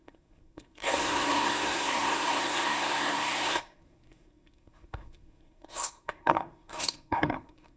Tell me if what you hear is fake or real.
fake